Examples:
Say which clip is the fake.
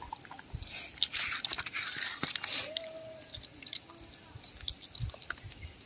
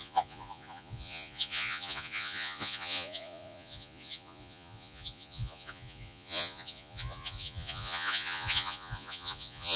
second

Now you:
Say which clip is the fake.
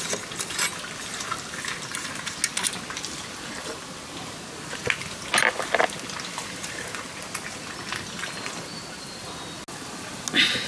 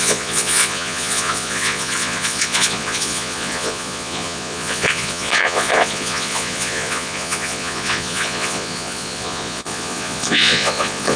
second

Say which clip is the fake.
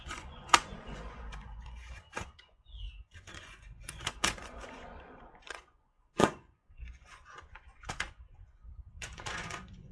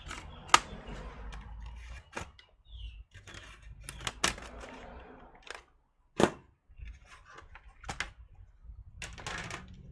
first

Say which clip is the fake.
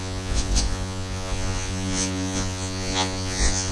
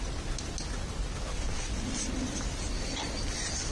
first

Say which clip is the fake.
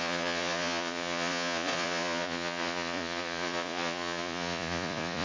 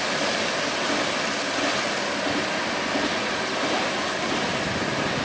first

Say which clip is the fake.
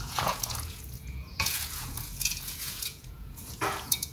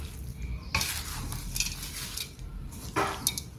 first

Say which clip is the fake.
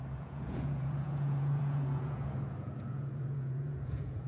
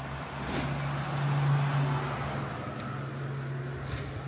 first